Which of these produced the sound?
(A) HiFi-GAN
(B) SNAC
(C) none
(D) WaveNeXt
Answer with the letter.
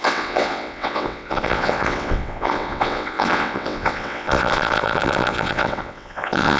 D